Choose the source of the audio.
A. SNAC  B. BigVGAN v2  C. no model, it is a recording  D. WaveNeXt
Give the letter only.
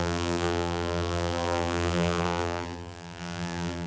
B